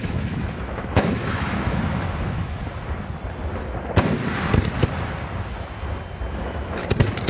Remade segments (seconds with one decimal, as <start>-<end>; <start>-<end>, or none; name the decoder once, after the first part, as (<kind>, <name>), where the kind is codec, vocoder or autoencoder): 0.0-2.6 (autoencoder, DAC-VAE); 6.3-6.8